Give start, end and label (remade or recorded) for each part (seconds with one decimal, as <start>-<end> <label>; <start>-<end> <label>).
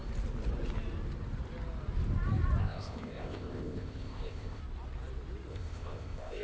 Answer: 0.0-2.6 recorded; 2.6-4.6 remade; 4.6-5.5 recorded; 5.5-6.4 remade